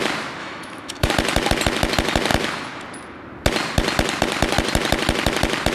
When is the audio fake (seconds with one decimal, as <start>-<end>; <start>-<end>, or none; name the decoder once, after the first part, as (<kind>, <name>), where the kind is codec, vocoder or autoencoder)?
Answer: 0.4-1.1 (autoencoder, DAC-VAE)